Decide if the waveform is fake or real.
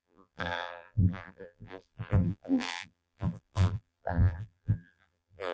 fake